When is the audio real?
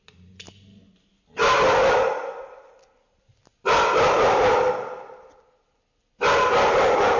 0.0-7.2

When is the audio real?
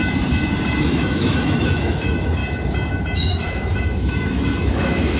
0.0-0.8; 2.4-3.0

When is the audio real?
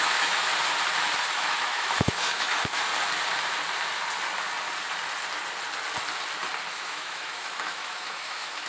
0.5-1.3; 2.9-6.7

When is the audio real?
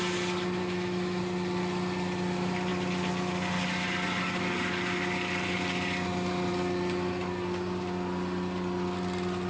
0.0-0.6; 1.2-9.5